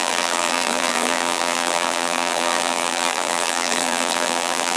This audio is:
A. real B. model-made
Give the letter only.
B